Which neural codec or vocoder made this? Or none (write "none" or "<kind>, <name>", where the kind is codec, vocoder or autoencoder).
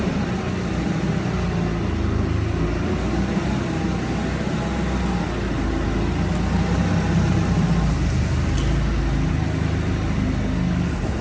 none